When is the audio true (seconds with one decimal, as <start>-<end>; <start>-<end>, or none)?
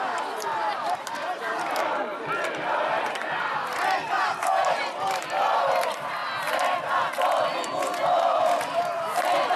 6.2-7.8